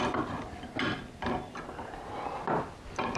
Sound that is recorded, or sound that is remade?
recorded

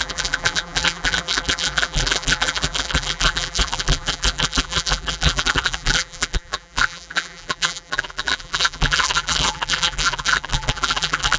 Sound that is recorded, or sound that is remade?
remade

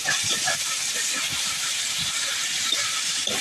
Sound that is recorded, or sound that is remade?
remade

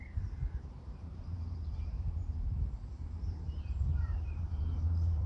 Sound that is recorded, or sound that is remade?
remade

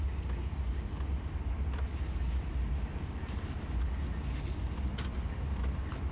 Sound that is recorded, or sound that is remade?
recorded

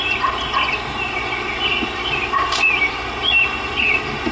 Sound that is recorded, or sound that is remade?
recorded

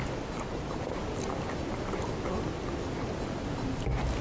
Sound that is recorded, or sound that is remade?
recorded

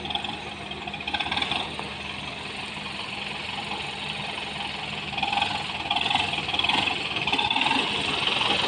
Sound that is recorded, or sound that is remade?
remade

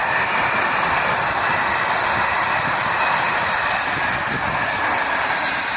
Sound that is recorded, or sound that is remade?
remade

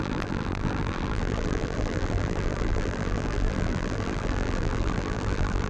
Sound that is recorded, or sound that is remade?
remade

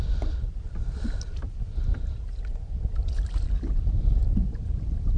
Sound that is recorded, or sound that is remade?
remade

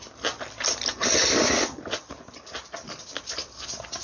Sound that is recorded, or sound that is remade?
remade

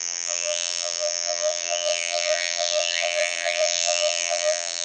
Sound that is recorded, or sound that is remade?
remade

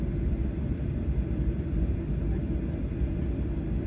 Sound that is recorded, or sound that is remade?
recorded